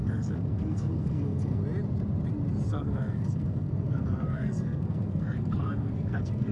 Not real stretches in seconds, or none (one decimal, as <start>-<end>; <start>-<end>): 0.0-1.6; 2.7-6.5